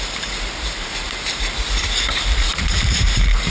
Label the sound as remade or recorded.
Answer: remade